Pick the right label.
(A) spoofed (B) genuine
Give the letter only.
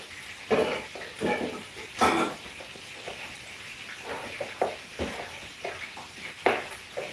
B